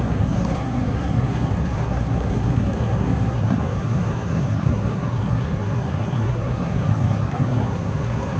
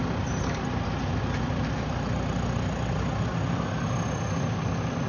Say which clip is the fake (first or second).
first